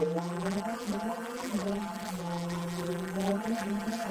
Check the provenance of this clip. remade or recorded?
remade